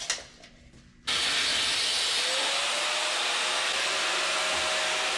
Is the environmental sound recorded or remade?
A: recorded